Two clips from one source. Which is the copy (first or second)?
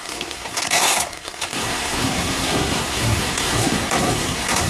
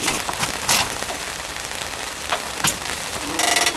first